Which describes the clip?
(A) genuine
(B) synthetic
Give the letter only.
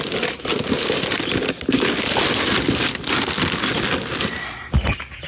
A